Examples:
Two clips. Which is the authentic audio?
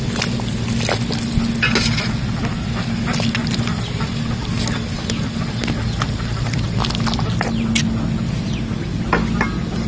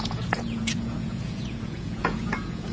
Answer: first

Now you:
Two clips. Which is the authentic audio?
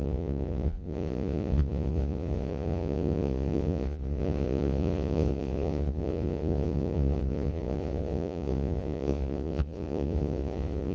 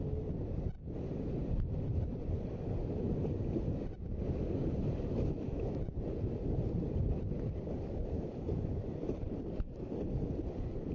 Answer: second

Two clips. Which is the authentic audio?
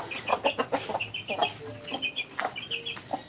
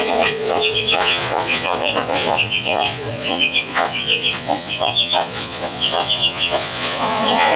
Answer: first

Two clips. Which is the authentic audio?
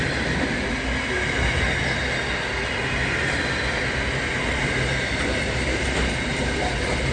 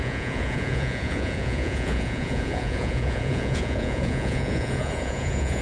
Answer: first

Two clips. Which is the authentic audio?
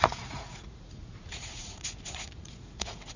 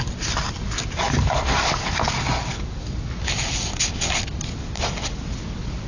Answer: second